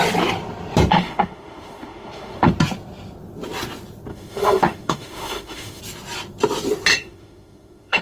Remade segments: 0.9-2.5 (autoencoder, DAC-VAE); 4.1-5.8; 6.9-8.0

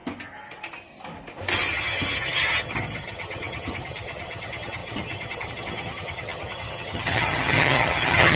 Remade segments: 1.7-8.4 (vocoder, HiFi-GAN)

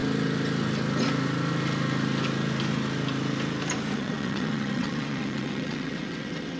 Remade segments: 3.9-6.6 (vocoder, WaveNeXt)

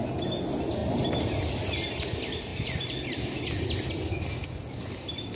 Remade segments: none

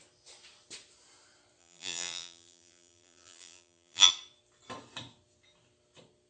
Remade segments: 1.6-4.1 (vocoder, BigVGAN v2)

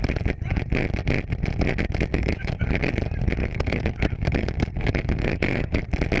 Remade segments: 2.1-2.9 (codec, DAC); 3.4-5.8

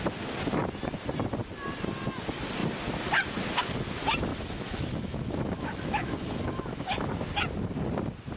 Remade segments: 4.3-7.2 (autoencoder, DAC-VAE)